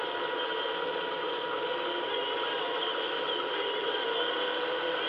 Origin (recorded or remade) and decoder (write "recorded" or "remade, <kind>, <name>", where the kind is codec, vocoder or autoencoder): recorded